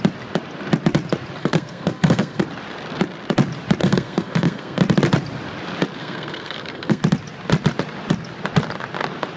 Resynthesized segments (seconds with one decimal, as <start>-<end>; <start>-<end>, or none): 1.4-2.4; 3.8-4.8; 6.0-7.0